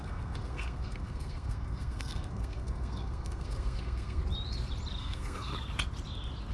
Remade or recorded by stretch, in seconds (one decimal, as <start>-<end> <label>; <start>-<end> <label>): 0.0-4.2 remade; 4.2-5.0 recorded; 5.0-5.5 remade; 5.5-6.5 recorded